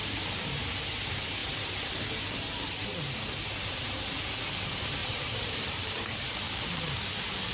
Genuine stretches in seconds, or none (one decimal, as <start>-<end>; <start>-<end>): 0.8-1.4; 2.1-5.0; 7.1-7.5